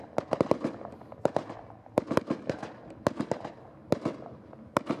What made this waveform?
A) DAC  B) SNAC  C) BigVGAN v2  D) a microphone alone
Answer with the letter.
D